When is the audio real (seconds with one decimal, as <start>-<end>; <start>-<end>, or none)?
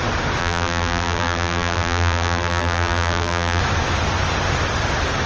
0.0-0.4; 3.6-5.3